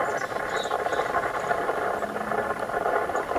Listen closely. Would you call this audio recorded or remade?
recorded